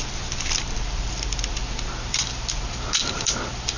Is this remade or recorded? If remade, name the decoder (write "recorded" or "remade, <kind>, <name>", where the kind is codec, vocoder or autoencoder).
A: remade, vocoder, BigVGAN v2